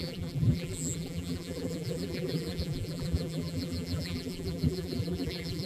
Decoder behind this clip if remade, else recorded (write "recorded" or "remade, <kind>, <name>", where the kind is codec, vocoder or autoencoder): remade, vocoder, BigVGAN v2